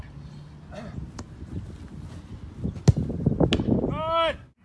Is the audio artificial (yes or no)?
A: no